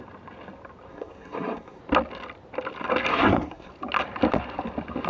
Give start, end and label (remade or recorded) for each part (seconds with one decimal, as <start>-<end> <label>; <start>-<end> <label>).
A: 0.0-0.9 recorded; 0.9-1.8 remade; 1.8-3.1 recorded; 3.1-3.7 remade; 3.7-5.1 recorded